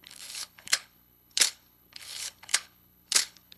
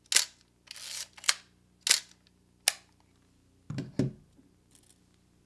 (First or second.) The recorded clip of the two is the second